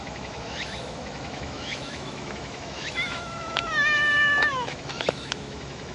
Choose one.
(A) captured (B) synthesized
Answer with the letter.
B